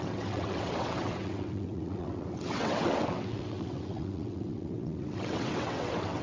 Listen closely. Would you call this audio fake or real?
fake